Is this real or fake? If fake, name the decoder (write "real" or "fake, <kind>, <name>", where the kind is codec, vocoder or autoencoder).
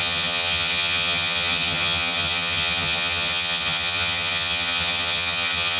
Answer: fake, vocoder, HiFi-GAN